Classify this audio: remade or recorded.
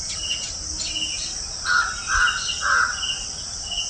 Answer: recorded